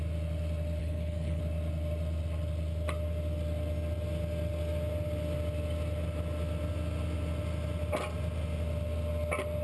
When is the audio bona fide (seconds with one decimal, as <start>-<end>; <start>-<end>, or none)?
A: 0.0-0.8; 1.4-9.6